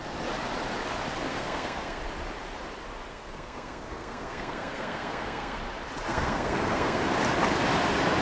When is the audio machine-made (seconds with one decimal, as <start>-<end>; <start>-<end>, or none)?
1.3-2.0; 3.1-5.6; 6.1-7.0